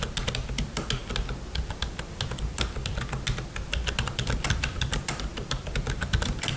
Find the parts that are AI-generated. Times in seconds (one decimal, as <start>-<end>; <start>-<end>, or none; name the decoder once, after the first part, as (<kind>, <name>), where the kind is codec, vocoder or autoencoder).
none